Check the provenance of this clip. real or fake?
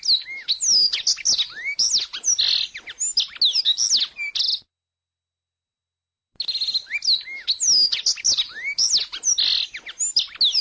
real